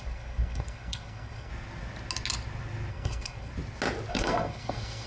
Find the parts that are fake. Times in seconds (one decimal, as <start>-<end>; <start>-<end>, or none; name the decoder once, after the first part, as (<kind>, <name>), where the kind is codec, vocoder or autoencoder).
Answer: 0.0-1.5 (codec, SNAC); 2.9-3.5; 4.1-5.1